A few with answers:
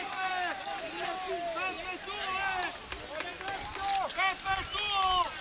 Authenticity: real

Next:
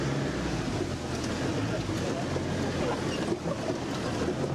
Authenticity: real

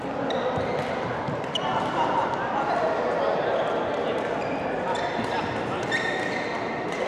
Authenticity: real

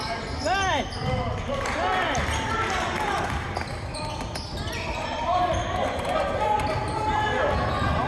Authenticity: real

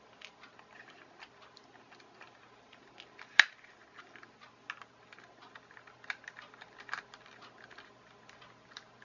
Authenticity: real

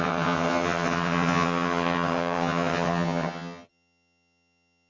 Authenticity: fake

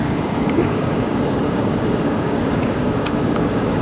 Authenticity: fake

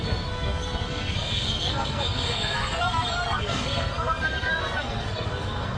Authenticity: fake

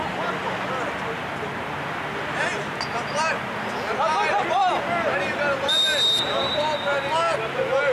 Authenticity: real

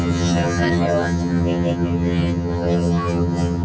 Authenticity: fake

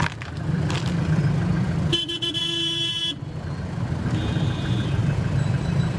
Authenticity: fake